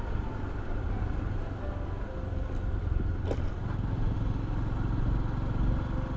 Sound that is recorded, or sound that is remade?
recorded